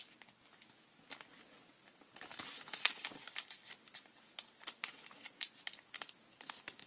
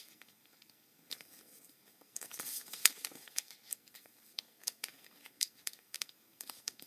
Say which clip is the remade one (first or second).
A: second